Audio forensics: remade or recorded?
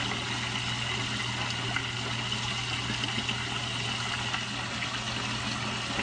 recorded